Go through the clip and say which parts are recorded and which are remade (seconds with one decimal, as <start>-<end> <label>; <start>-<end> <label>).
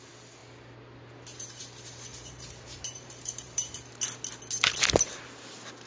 0.0-2.1 recorded; 2.1-3.7 remade; 3.7-5.9 recorded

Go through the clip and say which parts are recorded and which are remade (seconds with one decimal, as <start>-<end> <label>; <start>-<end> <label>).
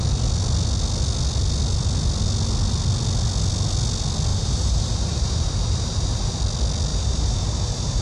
0.0-4.3 recorded; 4.3-6.4 remade; 6.4-6.9 recorded; 6.9-8.0 remade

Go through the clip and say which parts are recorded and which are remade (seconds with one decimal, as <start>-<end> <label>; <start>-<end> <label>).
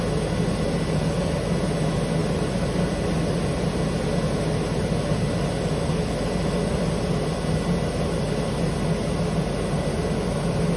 0.0-10.8 recorded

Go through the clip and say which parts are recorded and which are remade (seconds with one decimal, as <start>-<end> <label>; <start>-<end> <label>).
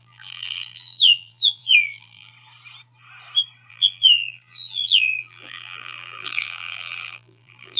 0.0-2.3 remade; 2.3-3.7 recorded; 3.7-7.8 remade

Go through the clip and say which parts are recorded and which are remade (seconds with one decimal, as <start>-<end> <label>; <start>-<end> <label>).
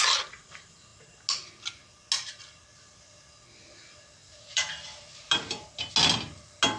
0.0-4.2 recorded; 4.2-5.9 remade; 5.9-6.8 recorded